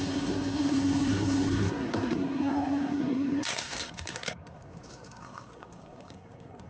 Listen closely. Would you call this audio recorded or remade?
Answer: remade